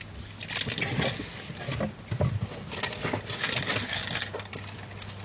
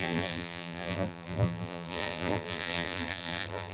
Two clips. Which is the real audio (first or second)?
first